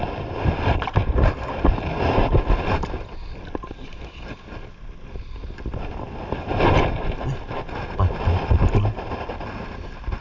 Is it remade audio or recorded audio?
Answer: recorded